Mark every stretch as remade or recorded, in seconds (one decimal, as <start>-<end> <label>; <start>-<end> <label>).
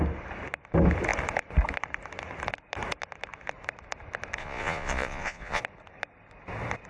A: 0.0-4.4 recorded; 4.4-5.6 remade; 5.6-6.9 recorded